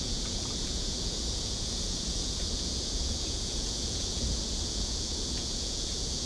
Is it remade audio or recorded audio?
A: remade